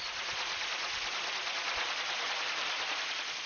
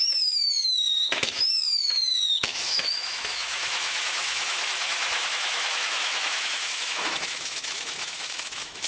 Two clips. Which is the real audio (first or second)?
first